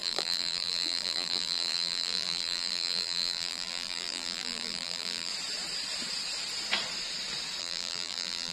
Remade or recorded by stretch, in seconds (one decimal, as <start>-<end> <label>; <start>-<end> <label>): 0.0-5.3 remade; 5.3-7.6 recorded; 7.6-8.5 remade